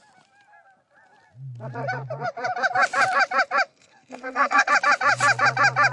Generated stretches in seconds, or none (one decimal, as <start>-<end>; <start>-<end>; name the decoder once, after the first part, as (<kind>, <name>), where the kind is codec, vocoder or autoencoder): 3.7-4.7 (codec, SNAC)